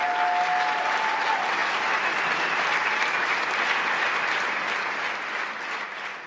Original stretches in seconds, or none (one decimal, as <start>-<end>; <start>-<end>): 0.0-6.3